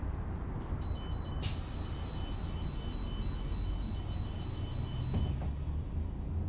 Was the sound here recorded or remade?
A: recorded